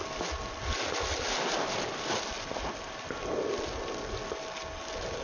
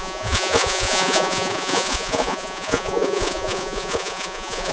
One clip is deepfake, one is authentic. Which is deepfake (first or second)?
second